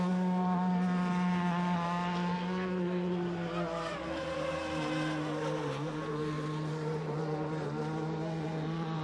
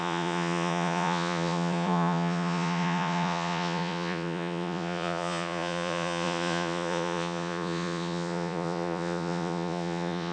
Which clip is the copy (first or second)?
second